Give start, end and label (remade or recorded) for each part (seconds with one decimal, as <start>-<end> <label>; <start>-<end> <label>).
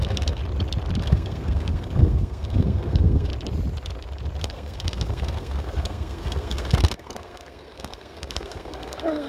0.0-0.4 remade; 0.4-1.0 recorded; 1.0-3.3 remade; 3.3-4.4 recorded; 4.4-9.3 remade